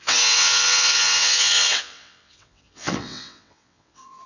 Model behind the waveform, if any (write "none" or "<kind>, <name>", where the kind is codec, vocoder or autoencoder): vocoder, WaveNeXt